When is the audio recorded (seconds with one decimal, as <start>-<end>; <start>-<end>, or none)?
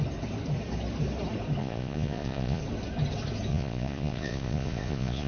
0.0-1.6; 2.6-3.5